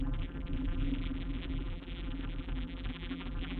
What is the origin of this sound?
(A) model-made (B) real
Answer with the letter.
A